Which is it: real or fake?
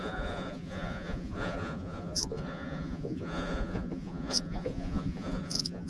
fake